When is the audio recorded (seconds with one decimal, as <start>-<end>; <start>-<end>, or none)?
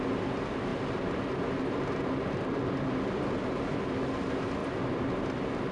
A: 0.0-4.6; 5.1-5.7